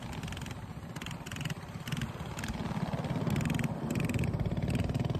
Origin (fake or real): real